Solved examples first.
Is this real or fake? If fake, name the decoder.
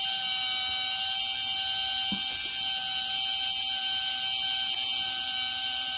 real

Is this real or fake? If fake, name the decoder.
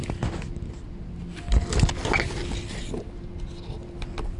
real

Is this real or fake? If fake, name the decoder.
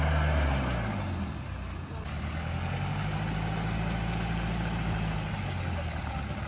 real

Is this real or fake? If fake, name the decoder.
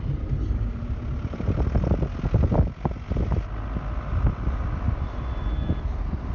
real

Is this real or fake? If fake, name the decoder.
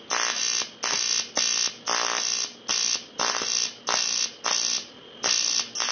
real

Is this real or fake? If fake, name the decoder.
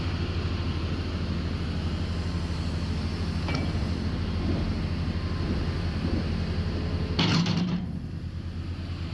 real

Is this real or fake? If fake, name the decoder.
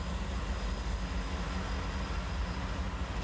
real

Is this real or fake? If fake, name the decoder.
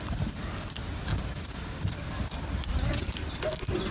real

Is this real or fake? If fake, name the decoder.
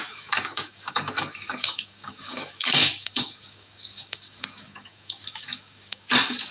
fake, codec, DAC